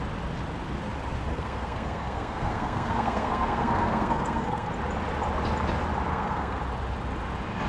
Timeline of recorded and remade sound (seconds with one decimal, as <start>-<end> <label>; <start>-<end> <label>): 0.0-1.3 recorded; 1.3-4.7 remade; 4.7-6.1 recorded; 6.1-6.6 remade; 6.6-7.7 recorded